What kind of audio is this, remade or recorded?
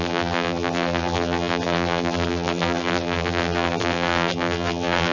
remade